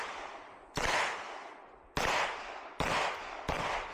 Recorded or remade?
recorded